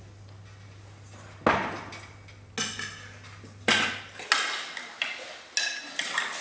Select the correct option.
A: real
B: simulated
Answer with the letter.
A